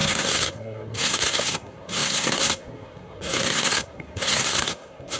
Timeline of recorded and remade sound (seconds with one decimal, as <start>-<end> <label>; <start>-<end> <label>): 0.0-5.2 remade